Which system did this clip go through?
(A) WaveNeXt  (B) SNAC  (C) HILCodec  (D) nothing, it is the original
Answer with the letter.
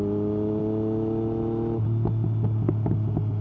D